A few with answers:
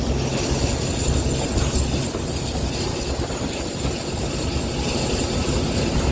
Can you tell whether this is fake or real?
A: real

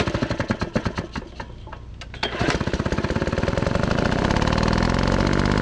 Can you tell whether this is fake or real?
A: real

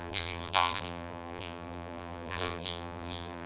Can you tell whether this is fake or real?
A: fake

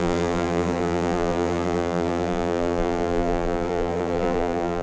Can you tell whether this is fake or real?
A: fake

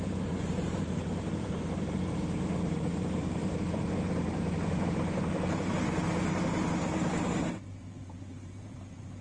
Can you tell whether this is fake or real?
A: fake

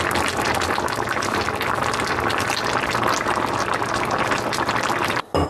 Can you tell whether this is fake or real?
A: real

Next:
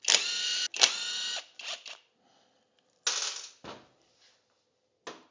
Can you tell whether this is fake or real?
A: real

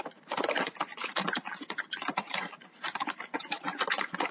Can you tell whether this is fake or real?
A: real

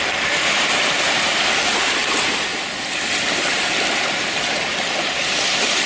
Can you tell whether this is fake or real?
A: fake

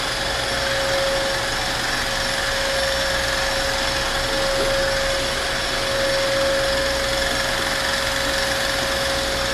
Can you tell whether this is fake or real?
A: real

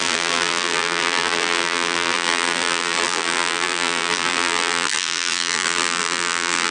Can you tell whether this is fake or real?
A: fake